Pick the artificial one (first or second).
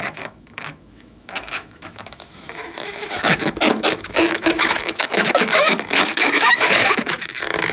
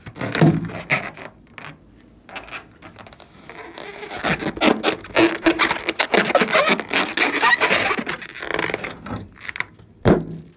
first